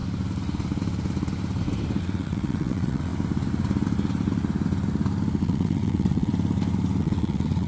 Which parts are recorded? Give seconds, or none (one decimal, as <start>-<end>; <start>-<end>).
0.0-2.0; 3.1-5.4; 6.3-7.0